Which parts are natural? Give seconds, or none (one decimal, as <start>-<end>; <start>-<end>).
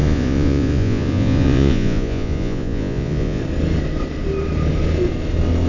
3.4-5.7